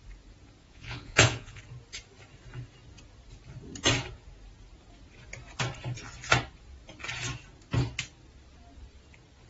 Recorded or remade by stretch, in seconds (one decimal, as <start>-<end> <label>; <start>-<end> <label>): 0.0-0.6 recorded; 0.6-1.6 remade; 1.6-9.5 recorded